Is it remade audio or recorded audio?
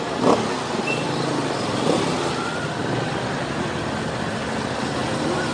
recorded